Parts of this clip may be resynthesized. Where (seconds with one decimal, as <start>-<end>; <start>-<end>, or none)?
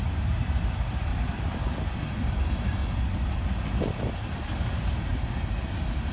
0.0-1.1; 2.3-2.8; 4.0-5.1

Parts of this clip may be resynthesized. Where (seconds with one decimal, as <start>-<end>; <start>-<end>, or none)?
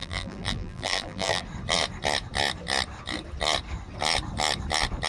0.0-1.4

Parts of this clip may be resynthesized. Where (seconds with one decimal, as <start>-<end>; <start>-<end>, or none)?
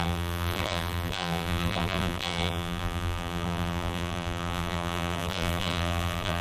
0.0-6.4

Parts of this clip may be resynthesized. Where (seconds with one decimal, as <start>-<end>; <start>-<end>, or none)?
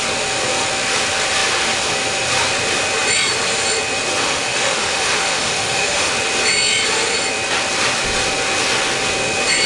4.2-6.1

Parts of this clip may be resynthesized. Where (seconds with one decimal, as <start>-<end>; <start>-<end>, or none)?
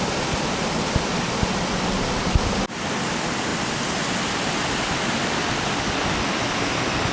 none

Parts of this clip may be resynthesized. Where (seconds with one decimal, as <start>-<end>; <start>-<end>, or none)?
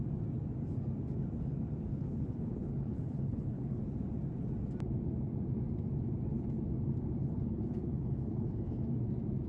1.9-3.8; 7.2-8.8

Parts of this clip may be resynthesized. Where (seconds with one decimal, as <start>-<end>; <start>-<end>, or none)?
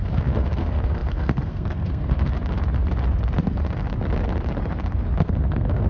0.0-2.3; 5.2-5.9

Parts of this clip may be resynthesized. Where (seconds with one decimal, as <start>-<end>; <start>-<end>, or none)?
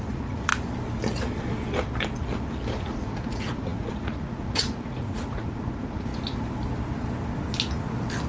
0.0-0.5; 2.8-6.1